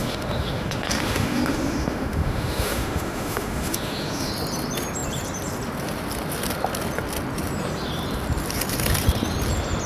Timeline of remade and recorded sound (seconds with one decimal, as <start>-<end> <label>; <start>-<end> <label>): 0.0-4.3 remade; 4.3-9.9 recorded

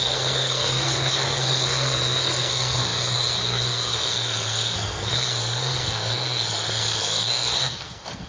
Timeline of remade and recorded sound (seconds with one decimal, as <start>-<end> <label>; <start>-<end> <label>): 0.0-8.3 remade